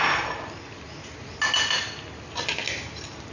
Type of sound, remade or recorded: recorded